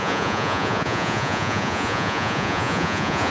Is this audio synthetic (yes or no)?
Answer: yes